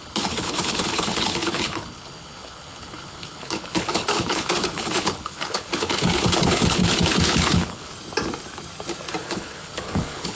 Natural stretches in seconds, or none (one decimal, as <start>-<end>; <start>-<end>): 7.9-9.2

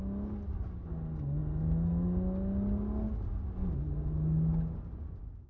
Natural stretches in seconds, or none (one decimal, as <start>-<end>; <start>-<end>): 0.0-5.5

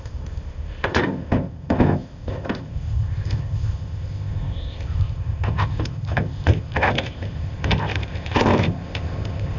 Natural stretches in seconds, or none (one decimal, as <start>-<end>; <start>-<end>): none

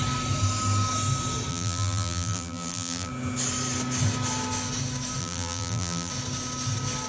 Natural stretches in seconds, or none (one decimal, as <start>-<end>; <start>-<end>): 0.0-1.5; 3.1-5.2; 6.1-7.1

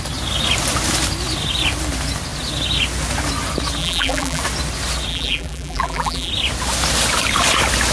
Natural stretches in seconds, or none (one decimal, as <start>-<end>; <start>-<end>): 0.0-3.8; 4.4-5.1; 6.3-7.9